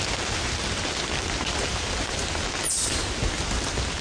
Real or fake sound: real